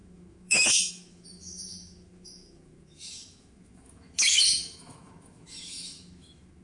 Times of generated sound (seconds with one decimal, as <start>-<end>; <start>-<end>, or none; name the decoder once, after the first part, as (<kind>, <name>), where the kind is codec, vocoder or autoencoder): 0.0-6.6 (autoencoder, DAC-VAE)